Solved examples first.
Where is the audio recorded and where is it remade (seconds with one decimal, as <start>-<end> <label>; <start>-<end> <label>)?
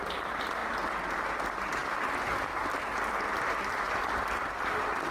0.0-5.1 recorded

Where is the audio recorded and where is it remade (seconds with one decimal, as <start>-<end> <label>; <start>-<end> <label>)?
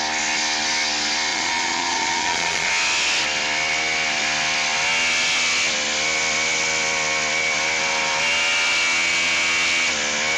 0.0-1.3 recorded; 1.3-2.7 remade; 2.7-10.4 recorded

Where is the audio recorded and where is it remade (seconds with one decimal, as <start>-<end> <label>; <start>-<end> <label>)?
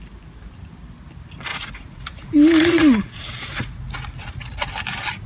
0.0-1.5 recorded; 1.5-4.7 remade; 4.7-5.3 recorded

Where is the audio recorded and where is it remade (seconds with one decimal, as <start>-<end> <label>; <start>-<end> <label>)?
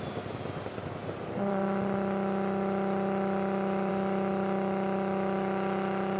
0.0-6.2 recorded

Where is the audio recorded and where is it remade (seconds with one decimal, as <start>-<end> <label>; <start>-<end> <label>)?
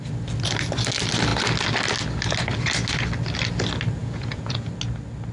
0.0-4.0 recorded; 4.0-4.7 remade; 4.7-5.3 recorded